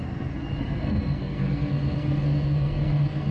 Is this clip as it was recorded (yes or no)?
no